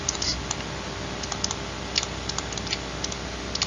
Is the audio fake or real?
real